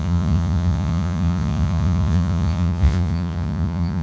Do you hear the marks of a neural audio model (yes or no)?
yes